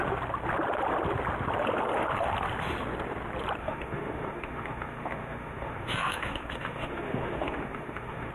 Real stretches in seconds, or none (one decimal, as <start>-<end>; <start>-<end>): 0.0-3.6